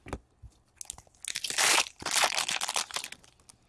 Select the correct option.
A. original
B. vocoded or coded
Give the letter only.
A